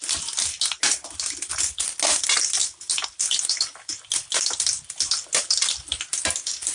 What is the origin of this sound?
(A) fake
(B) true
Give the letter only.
B